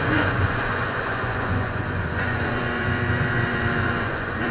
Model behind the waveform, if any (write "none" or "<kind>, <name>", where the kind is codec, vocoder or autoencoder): vocoder, Vocos